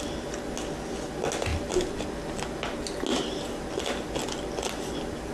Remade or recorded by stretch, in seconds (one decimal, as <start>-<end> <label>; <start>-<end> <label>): 0.0-5.3 recorded